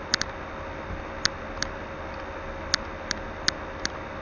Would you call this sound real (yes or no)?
yes